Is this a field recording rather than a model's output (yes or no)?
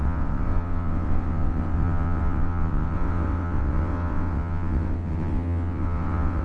no